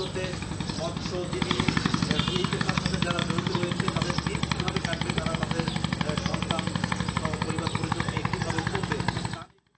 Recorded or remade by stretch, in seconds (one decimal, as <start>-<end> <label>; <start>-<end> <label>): 0.0-9.8 recorded